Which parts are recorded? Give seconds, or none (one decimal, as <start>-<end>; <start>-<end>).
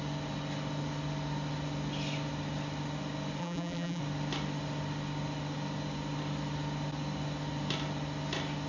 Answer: 0.0-3.4; 4.0-8.7